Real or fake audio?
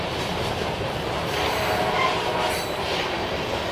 fake